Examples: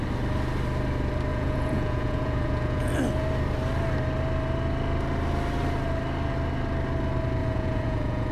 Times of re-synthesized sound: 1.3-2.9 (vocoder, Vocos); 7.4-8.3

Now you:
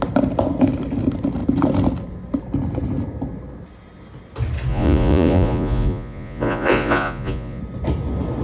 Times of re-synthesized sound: 4.7-7.6 (vocoder, Vocos)

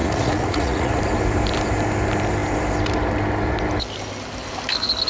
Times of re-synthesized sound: 0.0-1.0 (vocoder, Vocos)

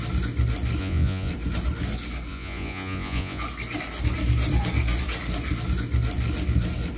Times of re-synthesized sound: 0.8-1.3 (vocoder, Vocos); 2.3-3.4